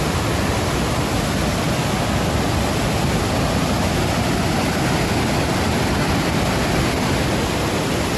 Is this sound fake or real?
real